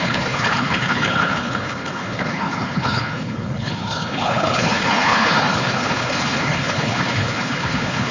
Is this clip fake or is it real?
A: fake